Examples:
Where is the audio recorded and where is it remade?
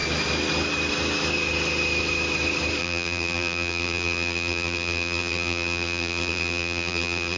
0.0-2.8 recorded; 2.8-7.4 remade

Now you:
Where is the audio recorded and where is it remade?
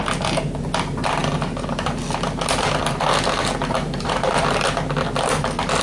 0.0-5.8 recorded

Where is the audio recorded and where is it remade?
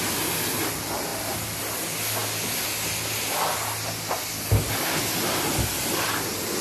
0.0-6.6 recorded